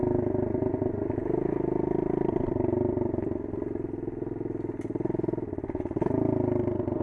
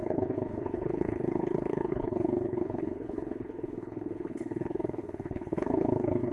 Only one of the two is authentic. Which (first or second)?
first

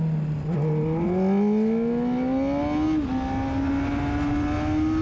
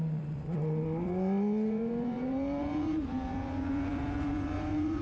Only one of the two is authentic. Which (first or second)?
first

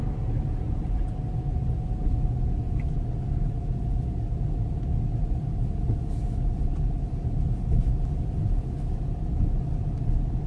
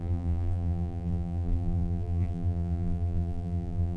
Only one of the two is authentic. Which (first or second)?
first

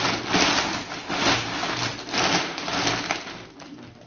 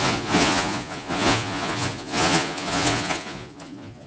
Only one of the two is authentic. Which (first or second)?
first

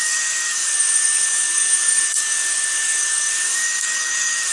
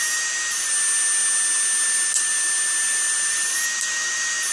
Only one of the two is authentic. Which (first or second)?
second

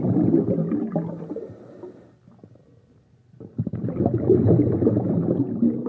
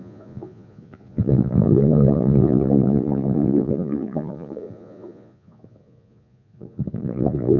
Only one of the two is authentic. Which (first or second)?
first